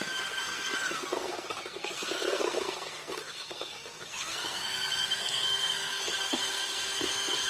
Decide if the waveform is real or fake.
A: fake